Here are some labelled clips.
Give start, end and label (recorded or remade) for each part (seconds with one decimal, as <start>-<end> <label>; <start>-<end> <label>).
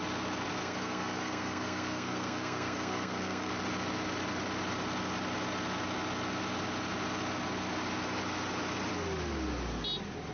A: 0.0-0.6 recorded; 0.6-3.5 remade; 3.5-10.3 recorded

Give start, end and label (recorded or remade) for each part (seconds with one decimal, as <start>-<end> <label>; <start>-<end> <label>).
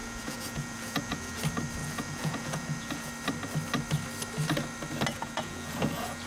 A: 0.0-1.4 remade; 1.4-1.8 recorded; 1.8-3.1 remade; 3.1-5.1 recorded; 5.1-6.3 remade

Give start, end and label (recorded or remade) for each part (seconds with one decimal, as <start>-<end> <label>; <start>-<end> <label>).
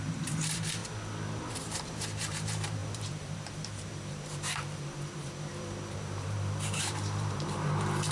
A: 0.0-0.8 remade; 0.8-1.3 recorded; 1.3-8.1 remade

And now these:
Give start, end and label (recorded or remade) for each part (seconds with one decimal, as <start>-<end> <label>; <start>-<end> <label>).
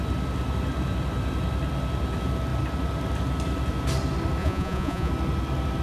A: 0.0-4.4 recorded; 4.4-5.1 remade; 5.1-5.8 recorded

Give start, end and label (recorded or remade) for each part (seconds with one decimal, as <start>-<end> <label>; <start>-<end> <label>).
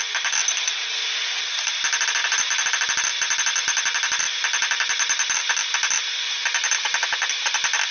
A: 0.0-2.2 recorded; 2.2-5.5 remade; 5.5-7.9 recorded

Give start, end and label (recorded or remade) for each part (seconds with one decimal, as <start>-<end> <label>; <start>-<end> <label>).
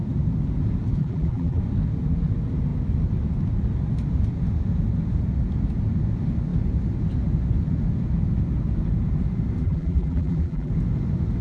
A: 0.0-1.0 recorded; 1.0-1.6 remade; 1.6-9.6 recorded; 9.6-10.7 remade; 10.7-11.4 recorded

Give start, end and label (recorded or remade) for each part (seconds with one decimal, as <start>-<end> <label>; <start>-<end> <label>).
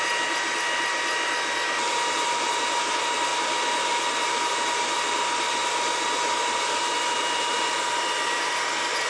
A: 0.0-9.1 recorded